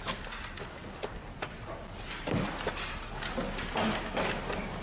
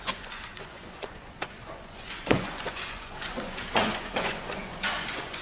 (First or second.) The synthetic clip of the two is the second